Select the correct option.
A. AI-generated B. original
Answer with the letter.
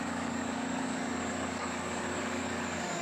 A